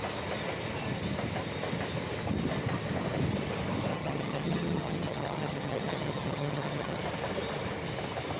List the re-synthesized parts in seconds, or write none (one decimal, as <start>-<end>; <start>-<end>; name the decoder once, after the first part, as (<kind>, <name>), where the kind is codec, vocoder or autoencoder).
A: 3.9-7.0 (vocoder, HiFi-GAN)